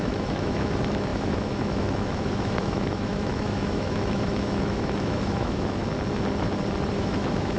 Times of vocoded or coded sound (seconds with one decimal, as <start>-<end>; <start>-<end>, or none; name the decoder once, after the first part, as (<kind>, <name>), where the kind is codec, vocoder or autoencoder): 0.0-5.8 (autoencoder, DAC-VAE); 6.9-7.6